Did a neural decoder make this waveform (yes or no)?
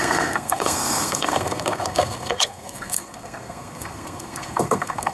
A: yes